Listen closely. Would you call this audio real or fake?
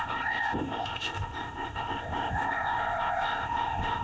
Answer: fake